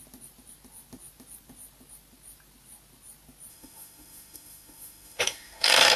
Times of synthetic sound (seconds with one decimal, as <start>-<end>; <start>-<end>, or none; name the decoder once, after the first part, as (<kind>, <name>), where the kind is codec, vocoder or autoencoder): 3.5-6.0 (autoencoder, DAC-VAE)